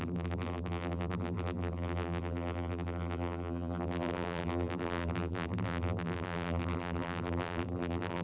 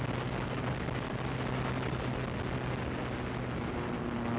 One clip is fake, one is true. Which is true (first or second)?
second